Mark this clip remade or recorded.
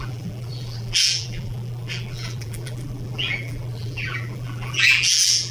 remade